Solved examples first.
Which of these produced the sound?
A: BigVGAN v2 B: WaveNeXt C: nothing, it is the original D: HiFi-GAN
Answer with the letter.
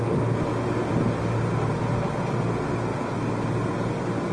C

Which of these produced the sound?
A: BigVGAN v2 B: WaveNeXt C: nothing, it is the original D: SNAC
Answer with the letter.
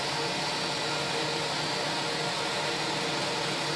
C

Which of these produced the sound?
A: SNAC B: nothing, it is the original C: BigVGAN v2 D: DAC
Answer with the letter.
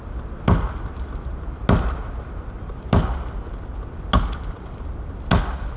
B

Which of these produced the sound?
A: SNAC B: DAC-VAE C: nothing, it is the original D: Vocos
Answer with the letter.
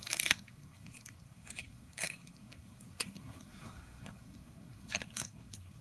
A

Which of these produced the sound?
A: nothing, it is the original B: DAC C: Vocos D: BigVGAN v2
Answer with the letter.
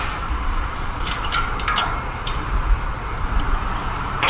D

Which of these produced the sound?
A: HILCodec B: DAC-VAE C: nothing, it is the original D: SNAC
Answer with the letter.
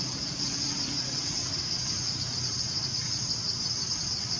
C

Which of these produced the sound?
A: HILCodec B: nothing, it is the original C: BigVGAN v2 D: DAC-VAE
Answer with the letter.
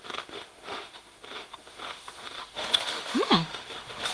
D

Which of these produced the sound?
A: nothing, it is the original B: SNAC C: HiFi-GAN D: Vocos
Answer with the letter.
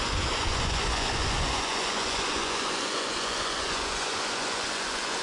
D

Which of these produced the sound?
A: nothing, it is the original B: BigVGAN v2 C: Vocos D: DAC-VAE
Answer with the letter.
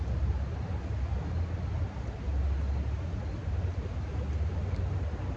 A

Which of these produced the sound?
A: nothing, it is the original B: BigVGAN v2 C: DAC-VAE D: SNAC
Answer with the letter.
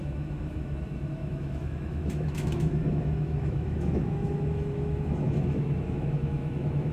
C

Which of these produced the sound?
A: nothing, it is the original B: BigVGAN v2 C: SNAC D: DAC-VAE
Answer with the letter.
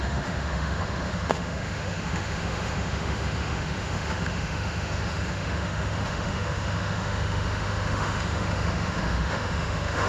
D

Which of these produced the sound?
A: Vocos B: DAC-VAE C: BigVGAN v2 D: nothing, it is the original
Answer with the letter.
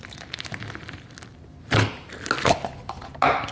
D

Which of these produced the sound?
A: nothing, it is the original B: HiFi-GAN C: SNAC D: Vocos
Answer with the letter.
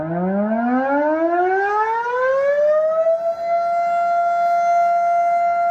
A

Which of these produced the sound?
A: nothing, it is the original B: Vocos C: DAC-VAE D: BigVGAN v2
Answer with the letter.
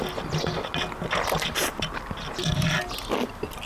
A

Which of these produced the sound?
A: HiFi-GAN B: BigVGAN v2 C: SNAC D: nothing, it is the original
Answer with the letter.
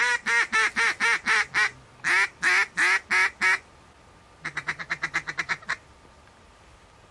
D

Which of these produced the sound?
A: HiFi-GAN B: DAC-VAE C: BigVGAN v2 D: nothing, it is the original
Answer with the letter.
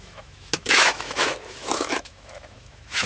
B